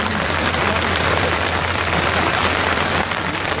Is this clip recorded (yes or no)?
no